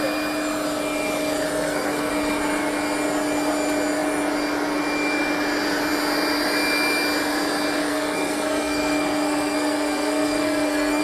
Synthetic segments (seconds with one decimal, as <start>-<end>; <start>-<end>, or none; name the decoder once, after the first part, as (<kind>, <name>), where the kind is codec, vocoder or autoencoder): 1.5-2.1 (codec, SNAC); 7.9-11.0